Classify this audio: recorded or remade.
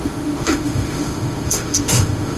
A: remade